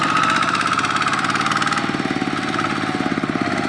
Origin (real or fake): real